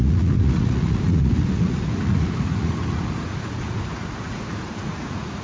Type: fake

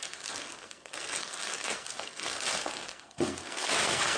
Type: fake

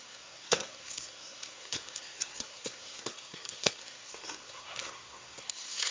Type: fake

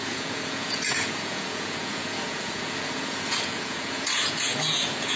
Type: fake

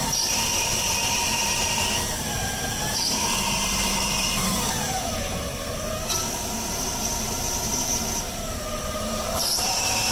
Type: fake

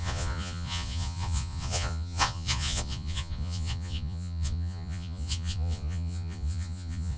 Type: fake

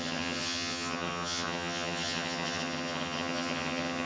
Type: fake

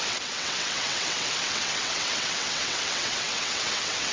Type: fake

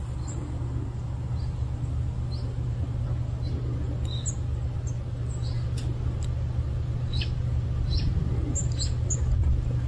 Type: real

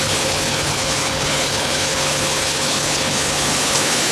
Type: fake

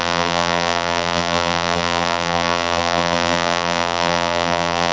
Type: fake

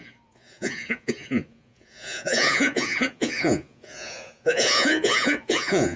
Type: fake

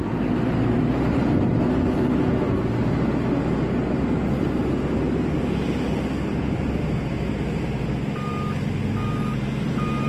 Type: real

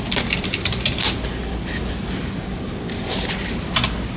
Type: real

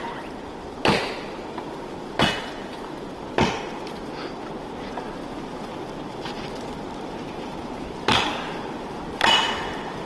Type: real